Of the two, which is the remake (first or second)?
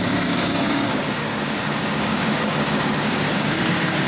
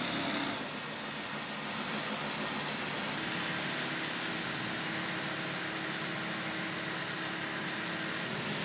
first